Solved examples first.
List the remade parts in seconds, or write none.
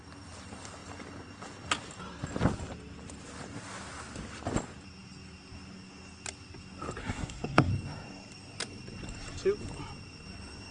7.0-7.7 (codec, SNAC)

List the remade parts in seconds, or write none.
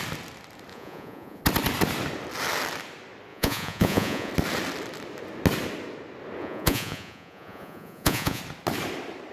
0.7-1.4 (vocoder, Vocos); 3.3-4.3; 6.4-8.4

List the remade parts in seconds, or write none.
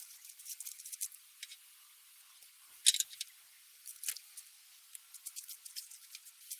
none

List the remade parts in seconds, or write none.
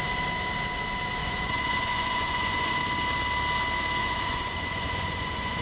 1.2-2.8 (vocoder, Vocos); 4.0-5.6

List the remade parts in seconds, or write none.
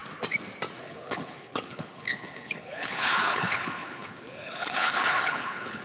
0.8-5.8 (codec, HILCodec)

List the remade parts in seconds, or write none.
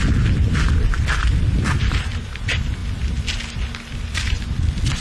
0.0-5.0 (vocoder, BigVGAN v2)